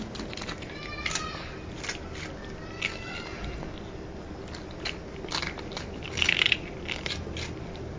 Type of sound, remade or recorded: recorded